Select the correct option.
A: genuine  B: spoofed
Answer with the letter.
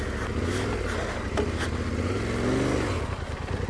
A